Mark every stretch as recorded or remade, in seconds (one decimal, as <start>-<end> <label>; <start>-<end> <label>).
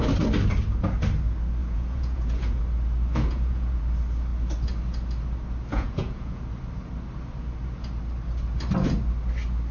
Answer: 0.0-1.6 recorded; 1.6-2.6 remade; 2.6-3.1 recorded; 3.1-3.8 remade; 3.8-5.7 recorded; 5.7-6.4 remade; 6.4-9.7 recorded